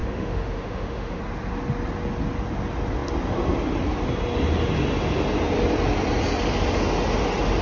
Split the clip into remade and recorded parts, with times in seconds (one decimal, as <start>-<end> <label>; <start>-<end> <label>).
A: 0.0-1.2 remade; 1.2-7.6 recorded